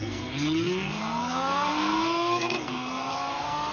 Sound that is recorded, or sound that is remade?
remade